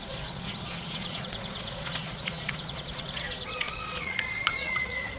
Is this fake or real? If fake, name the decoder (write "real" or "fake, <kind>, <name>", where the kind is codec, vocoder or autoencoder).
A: fake, vocoder, Vocos